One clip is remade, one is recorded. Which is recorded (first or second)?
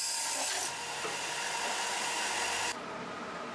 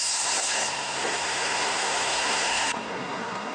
first